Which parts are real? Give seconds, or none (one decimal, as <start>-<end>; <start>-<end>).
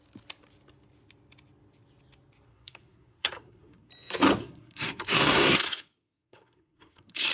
0.0-2.5; 3.9-4.4